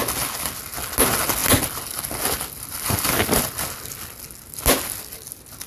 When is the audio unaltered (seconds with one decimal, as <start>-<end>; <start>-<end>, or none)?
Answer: 0.0-5.7